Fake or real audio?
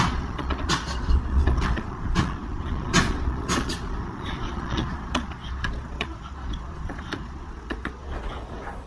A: fake